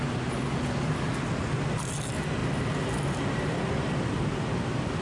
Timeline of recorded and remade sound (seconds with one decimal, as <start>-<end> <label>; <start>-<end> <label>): 0.0-2.4 recorded; 2.4-2.9 remade; 2.9-5.0 recorded